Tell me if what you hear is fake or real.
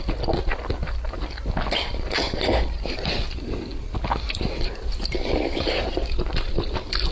real